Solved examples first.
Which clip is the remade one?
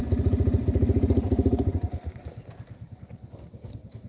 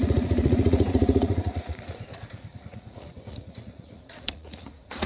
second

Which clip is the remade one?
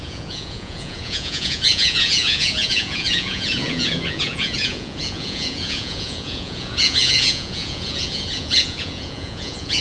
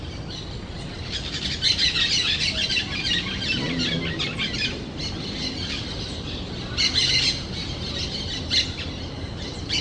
first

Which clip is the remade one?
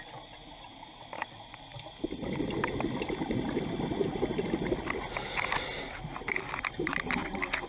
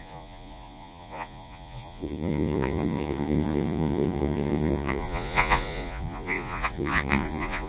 second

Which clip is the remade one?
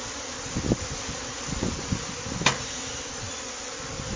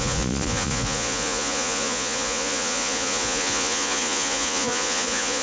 second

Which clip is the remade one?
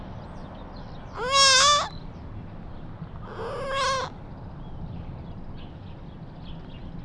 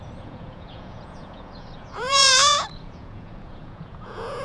second